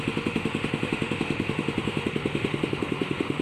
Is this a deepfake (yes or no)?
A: yes